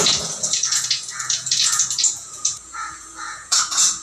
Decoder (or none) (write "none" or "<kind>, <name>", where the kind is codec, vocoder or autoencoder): vocoder, Vocos